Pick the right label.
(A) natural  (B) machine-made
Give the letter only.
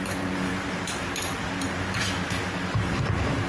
B